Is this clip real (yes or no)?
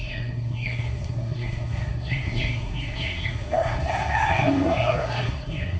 no